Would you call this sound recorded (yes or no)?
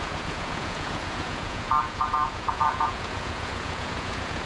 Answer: no